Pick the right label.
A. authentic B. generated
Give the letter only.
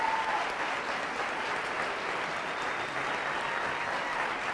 A